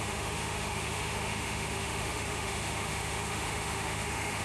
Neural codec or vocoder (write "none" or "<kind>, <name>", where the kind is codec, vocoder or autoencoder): autoencoder, DAC-VAE